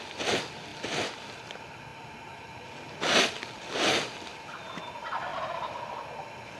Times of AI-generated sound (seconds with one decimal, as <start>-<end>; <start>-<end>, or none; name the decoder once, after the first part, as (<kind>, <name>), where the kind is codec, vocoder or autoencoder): 0.7-1.3 (vocoder, BigVGAN v2); 5.3-6.0